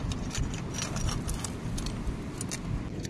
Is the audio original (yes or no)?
yes